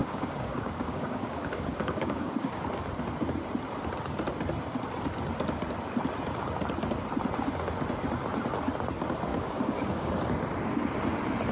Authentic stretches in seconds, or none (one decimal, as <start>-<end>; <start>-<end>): 2.6-9.3; 10.1-11.5